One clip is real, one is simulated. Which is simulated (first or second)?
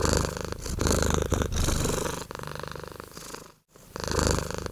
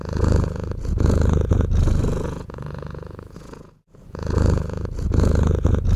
second